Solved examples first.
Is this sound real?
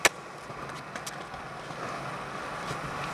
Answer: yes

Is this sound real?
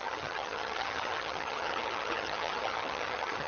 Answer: no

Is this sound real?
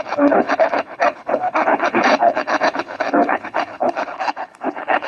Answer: no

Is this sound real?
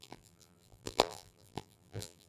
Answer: no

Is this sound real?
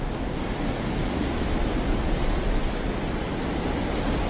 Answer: yes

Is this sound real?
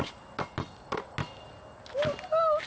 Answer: yes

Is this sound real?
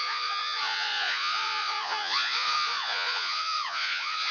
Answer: no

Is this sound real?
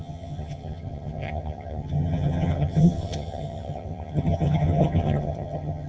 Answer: no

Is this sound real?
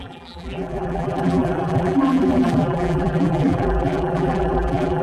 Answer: no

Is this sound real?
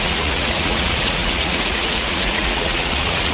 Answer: no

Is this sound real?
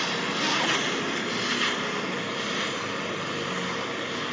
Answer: yes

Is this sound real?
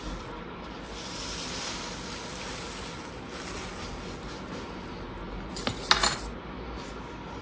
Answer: yes